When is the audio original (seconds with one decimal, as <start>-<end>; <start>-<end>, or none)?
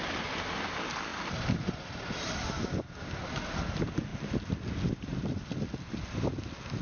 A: 0.0-6.8